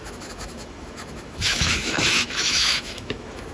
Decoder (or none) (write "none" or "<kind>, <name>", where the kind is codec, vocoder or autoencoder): autoencoder, DAC-VAE